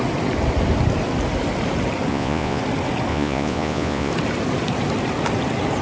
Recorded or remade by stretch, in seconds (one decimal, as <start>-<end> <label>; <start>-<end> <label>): 0.0-2.1 recorded; 2.1-2.6 remade; 2.6-3.1 recorded; 3.1-4.1 remade; 4.1-5.8 recorded